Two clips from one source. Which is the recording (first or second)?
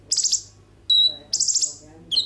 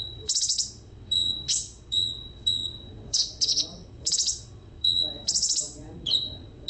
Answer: first